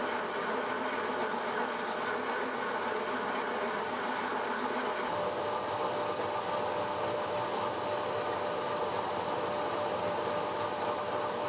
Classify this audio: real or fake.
real